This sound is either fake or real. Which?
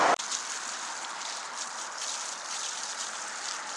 real